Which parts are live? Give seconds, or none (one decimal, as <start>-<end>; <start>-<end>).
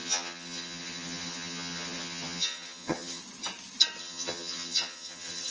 3.2-4.0